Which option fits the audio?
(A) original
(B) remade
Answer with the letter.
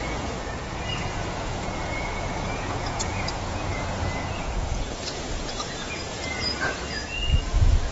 B